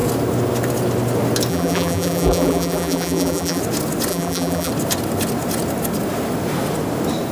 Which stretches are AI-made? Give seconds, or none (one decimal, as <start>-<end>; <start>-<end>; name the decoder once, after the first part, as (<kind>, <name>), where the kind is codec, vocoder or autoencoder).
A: 1.5-3.6 (vocoder, BigVGAN v2); 4.1-4.7